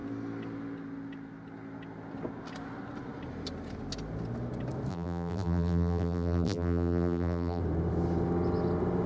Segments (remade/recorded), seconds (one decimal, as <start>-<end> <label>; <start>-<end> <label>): 0.0-4.9 recorded; 4.9-7.6 remade; 7.6-9.1 recorded